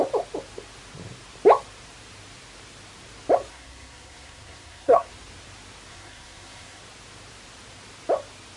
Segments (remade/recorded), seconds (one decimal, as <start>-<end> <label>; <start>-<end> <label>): 0.0-3.5 recorded; 3.5-5.1 remade; 5.1-5.9 recorded; 5.9-6.8 remade; 6.8-8.6 recorded